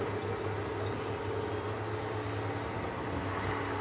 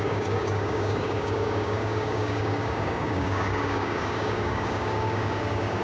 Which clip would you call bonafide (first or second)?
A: first